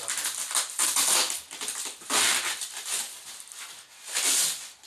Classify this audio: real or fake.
real